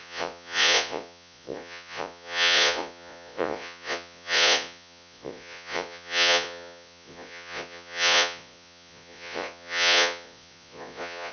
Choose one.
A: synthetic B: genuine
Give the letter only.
A